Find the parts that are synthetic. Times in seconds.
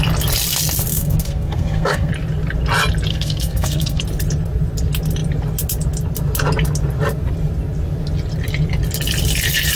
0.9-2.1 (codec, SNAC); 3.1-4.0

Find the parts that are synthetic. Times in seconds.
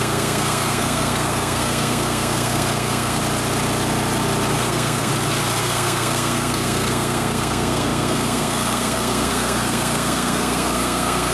0.0-3.2 (codec, SNAC); 4.5-5.1; 5.6-11.3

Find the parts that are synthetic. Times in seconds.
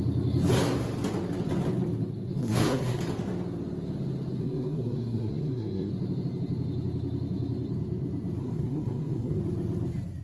2.4-3.0 (codec, SNAC); 4.4-5.9; 8.4-9.4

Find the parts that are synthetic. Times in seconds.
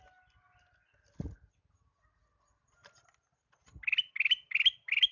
none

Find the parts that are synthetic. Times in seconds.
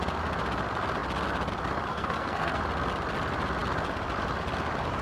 1.9-2.6 (codec, SNAC)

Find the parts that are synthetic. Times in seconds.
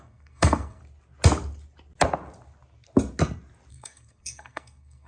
0.0-0.8 (codec, SNAC); 3.7-5.1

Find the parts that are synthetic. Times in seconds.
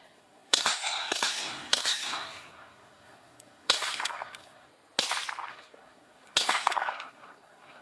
0.0-4.7 (codec, SNAC); 5.5-7.8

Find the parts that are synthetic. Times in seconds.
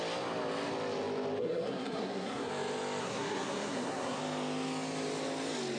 1.4-2.5 (codec, SNAC); 3.0-4.2